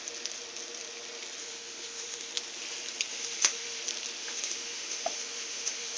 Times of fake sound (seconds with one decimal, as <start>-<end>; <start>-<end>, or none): 1.4-2.3; 3.1-3.8; 4.2-6.0